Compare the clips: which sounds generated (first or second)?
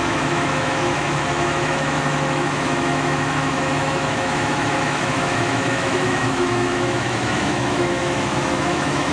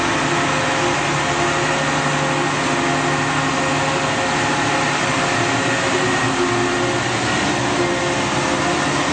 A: first